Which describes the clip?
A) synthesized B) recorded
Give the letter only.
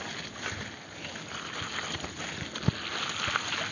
B